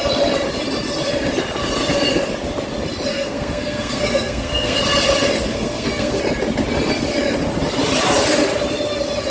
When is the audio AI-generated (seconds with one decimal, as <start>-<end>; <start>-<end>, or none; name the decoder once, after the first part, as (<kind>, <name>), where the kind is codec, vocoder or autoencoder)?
3.1-4.8 (codec, SNAC); 5.5-6.2